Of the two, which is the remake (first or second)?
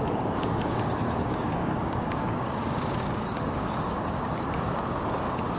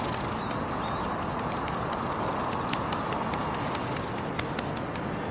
first